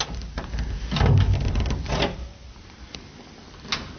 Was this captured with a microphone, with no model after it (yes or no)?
yes